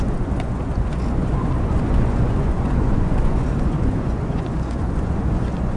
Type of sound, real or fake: fake